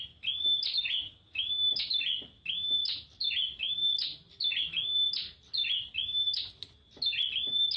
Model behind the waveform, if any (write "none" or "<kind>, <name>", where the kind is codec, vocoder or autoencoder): none